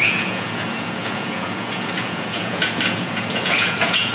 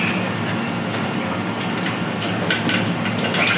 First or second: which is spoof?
first